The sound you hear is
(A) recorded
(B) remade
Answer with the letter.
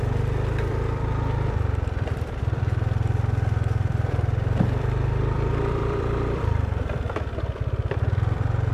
B